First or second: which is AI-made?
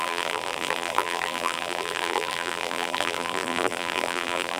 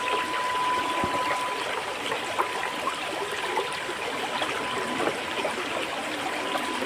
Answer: first